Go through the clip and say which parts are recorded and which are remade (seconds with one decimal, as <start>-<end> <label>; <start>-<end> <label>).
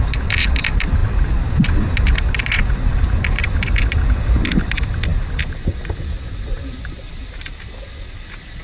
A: 0.0-8.6 recorded